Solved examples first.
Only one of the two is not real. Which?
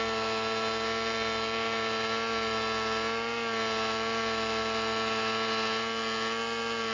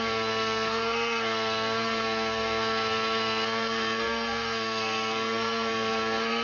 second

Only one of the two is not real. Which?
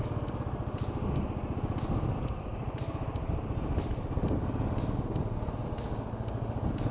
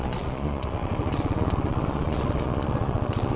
second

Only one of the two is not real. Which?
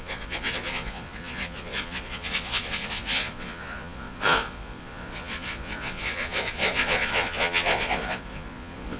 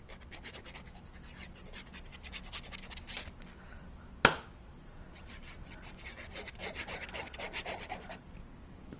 first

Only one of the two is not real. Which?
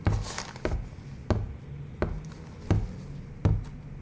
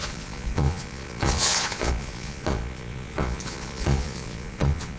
second